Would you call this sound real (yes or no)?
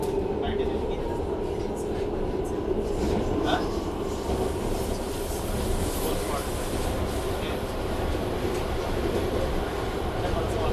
yes